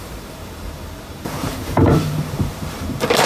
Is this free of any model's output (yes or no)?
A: no